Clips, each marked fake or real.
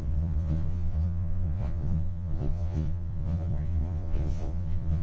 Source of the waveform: fake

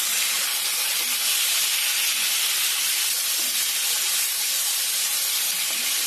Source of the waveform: real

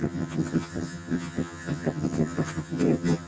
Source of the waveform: fake